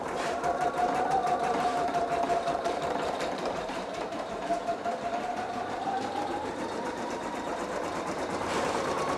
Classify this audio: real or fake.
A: fake